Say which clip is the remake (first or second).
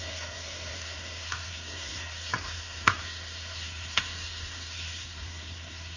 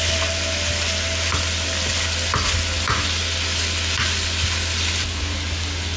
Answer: first